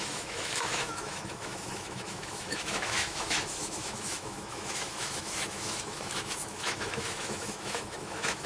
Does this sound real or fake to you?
fake